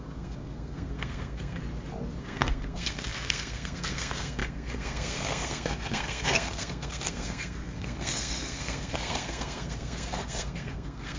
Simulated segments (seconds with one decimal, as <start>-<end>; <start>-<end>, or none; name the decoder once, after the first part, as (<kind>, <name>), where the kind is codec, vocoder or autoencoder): 0.0-1.6 (codec, SNAC); 2.2-11.2